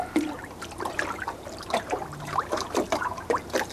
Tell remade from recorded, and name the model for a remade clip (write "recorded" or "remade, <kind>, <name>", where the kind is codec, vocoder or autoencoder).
remade, vocoder, BigVGAN v2